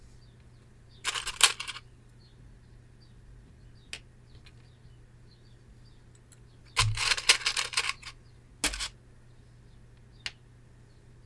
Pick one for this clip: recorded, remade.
recorded